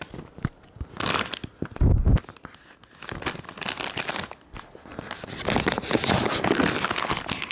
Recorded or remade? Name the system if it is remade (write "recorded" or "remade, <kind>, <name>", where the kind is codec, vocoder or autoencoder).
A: recorded